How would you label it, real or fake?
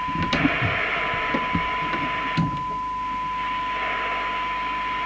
real